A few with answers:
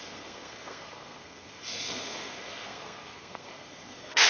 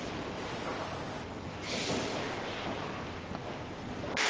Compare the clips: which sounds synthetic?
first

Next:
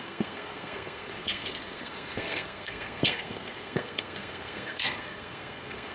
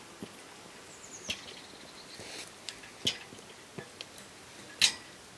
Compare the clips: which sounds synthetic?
first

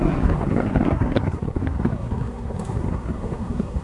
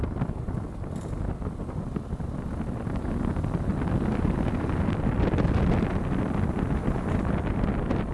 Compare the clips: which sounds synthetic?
first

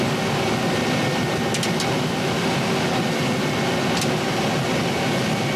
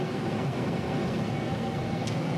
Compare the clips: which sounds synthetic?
second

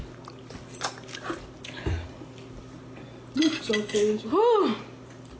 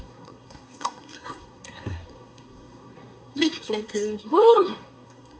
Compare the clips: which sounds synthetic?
second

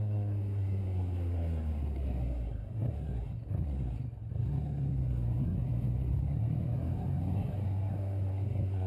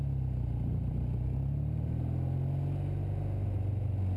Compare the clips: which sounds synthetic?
first